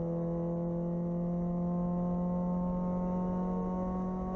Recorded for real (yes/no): yes